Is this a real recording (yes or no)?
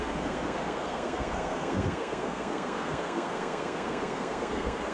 no